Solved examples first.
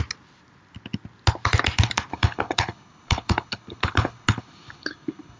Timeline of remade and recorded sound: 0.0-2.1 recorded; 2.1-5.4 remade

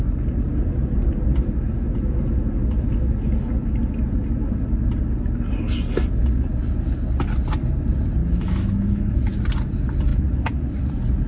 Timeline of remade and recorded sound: 0.0-8.2 recorded; 8.2-9.4 remade; 9.4-11.3 recorded

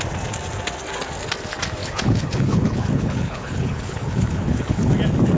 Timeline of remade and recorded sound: 0.0-1.8 recorded; 1.8-4.9 remade; 4.9-5.4 recorded

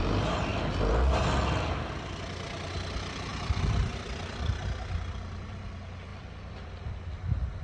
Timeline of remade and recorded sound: 0.0-3.3 recorded; 3.3-5.6 remade; 5.6-6.1 recorded; 6.1-6.9 remade; 6.9-7.6 recorded